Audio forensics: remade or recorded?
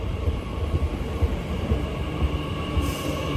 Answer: remade